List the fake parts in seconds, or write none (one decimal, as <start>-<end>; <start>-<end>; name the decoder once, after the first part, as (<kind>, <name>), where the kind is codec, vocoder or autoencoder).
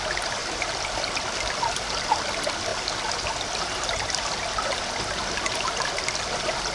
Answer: none